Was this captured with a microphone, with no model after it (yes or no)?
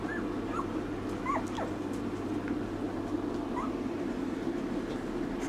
yes